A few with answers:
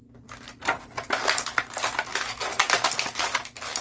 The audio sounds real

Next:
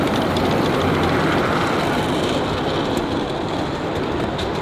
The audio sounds real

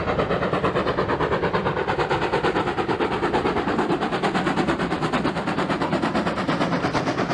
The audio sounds fake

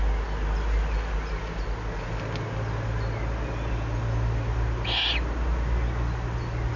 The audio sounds real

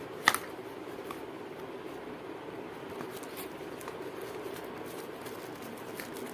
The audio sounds real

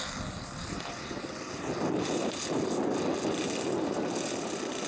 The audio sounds real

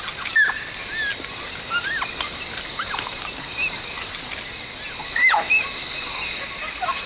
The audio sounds real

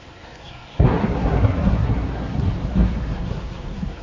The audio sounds fake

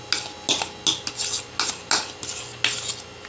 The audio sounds real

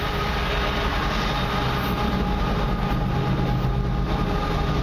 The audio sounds real